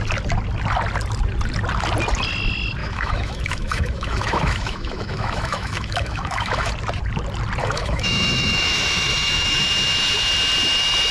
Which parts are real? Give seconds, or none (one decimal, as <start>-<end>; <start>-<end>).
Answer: 0.0-2.8; 6.7-7.6; 10.3-11.1